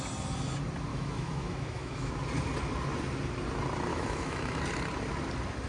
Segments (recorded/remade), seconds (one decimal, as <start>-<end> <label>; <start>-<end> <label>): 0.0-0.9 recorded; 0.9-2.1 remade; 2.1-3.9 recorded; 3.9-4.6 remade; 4.6-5.7 recorded